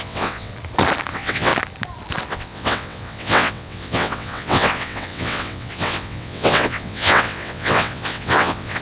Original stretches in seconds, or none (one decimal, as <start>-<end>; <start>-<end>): 0.5-1.1; 1.5-2.3